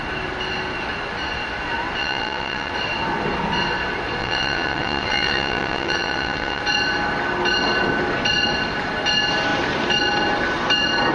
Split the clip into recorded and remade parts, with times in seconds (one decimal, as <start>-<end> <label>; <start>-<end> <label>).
0.0-2.0 recorded; 2.0-2.7 remade; 2.7-4.2 recorded; 4.2-6.6 remade; 6.6-11.1 recorded